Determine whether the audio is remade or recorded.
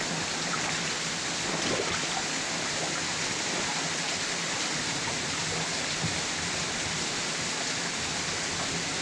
recorded